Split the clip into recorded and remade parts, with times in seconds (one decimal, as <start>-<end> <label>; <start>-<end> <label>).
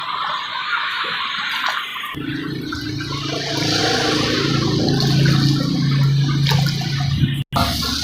0.0-0.5 recorded; 0.5-1.2 remade; 1.2-8.0 recorded